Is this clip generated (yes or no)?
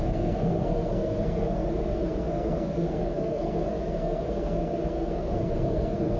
yes